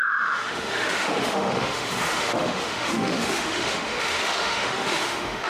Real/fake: fake